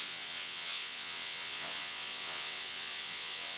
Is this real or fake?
fake